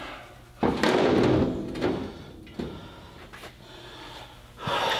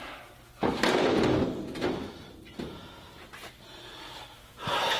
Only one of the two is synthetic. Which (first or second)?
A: second